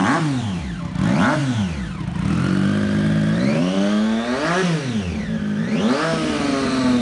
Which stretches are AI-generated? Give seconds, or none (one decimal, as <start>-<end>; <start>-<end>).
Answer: 0.0-0.8